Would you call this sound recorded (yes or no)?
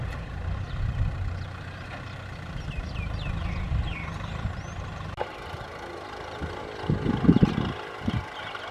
yes